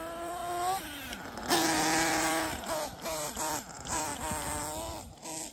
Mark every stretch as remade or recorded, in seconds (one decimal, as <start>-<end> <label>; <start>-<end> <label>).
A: 0.0-0.4 remade; 0.4-1.5 recorded; 1.5-4.1 remade; 4.1-5.5 recorded